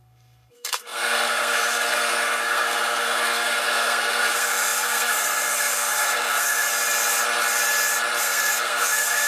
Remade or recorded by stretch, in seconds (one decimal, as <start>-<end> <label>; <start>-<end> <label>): 0.0-6.7 remade; 6.7-8.2 recorded; 8.2-9.3 remade